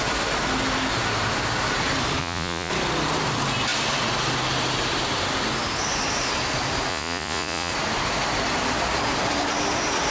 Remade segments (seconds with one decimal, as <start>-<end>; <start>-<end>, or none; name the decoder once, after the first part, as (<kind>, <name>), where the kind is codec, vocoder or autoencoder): 2.2-2.7 (vocoder, Vocos); 6.9-7.7